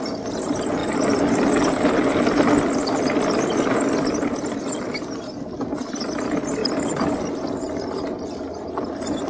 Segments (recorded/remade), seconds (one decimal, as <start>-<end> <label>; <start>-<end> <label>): 0.0-9.3 recorded